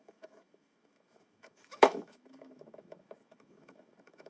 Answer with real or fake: fake